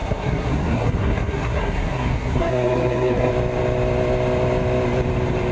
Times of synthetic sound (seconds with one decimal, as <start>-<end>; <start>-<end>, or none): 0.0-3.3